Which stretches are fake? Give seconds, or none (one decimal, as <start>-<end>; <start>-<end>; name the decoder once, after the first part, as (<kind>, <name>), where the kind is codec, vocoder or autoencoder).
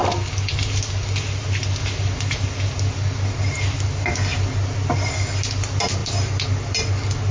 none